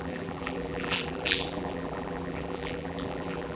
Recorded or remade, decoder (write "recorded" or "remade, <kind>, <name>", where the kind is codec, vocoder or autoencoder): remade, vocoder, BigVGAN v2